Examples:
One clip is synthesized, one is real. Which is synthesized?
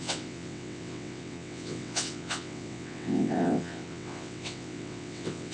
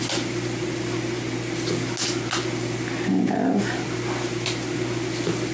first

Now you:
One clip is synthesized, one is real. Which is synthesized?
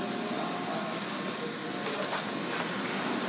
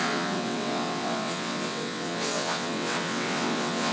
second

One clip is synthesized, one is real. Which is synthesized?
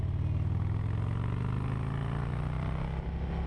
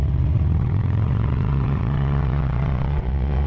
second